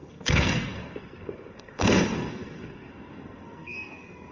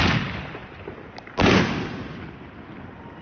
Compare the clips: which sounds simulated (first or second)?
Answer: first